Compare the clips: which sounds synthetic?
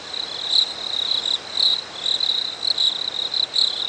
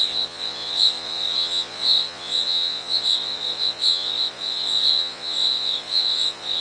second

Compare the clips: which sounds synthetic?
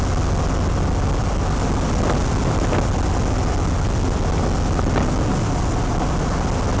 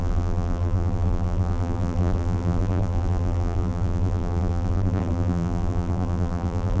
second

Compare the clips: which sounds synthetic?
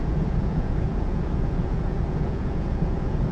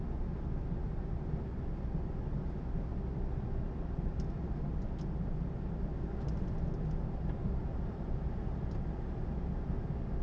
first